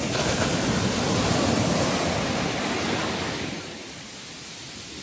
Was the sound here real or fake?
fake